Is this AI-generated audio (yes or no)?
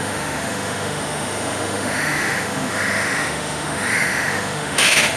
yes